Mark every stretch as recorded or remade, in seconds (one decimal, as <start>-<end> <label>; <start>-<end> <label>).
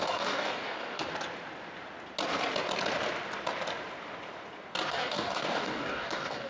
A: 0.0-1.1 remade; 1.1-4.9 recorded; 4.9-6.5 remade